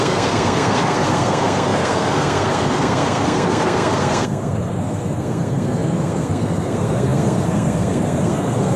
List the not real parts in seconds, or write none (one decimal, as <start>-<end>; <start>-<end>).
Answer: 0.0-8.8